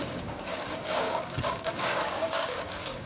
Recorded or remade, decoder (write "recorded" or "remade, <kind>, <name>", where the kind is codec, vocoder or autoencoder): remade, codec, DAC